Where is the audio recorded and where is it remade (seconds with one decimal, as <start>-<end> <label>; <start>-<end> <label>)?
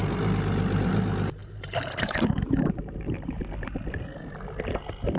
0.0-1.4 recorded; 1.4-3.4 remade; 3.4-5.2 recorded